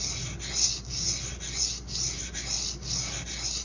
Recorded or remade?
recorded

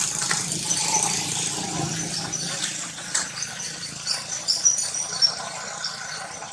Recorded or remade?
remade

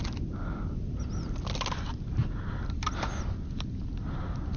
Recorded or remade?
recorded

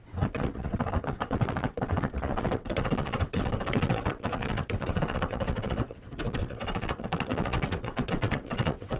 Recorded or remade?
remade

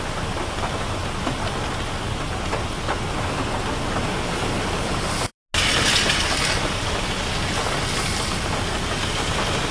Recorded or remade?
recorded